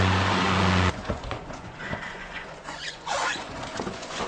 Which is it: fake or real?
fake